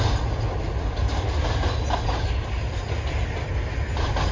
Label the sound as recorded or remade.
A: recorded